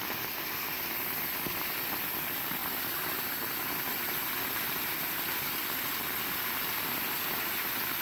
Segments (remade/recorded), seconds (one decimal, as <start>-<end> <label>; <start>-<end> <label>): 0.0-8.0 recorded